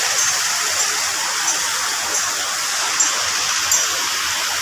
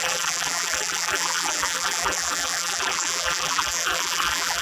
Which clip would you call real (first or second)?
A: first